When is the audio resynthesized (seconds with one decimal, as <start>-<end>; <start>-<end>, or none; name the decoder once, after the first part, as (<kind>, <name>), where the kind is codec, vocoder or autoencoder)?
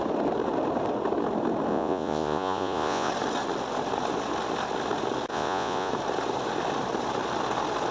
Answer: 1.7-3.1 (vocoder, Vocos); 5.3-5.9